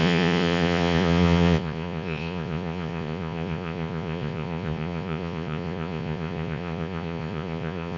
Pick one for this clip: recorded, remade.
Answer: remade